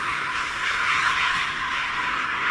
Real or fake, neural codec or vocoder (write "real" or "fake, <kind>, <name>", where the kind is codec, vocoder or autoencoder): fake, codec, SNAC